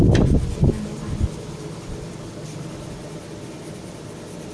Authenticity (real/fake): real